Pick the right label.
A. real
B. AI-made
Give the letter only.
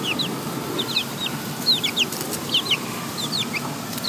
A